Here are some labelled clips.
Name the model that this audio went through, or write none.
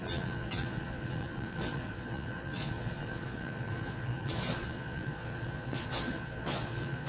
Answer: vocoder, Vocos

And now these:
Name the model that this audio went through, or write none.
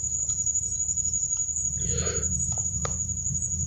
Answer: vocoder, Vocos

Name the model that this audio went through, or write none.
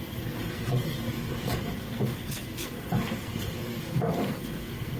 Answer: codec, SNAC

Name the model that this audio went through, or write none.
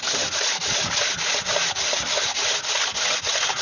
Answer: none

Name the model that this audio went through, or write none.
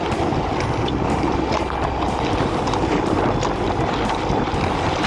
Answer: none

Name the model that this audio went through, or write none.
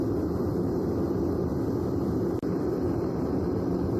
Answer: none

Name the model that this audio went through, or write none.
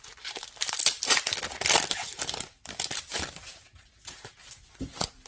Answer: none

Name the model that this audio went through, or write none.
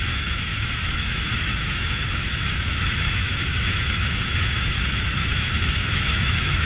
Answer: autoencoder, DAC-VAE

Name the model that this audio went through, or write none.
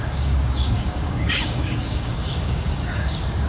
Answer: codec, DAC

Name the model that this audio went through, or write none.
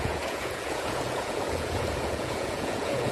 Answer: vocoder, Vocos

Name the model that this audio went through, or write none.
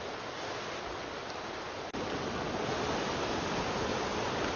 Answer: none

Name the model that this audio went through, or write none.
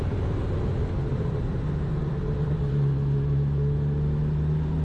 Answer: none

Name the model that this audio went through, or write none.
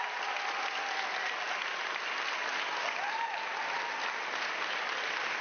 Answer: none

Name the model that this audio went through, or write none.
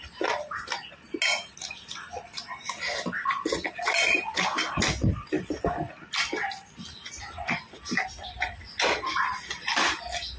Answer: none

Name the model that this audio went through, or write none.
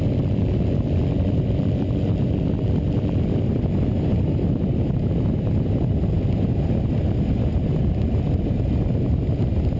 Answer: none